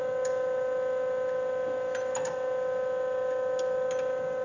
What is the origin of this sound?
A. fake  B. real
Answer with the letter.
B